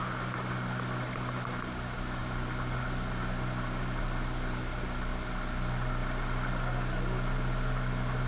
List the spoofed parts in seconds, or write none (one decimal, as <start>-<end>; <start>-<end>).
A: none

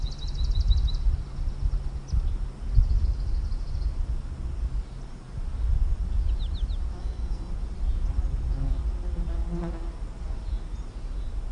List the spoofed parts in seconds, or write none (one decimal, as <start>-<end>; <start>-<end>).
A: 7.0-7.5

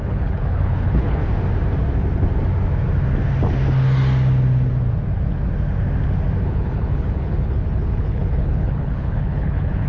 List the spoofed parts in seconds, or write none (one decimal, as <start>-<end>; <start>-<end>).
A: 0.0-1.2; 6.4-9.9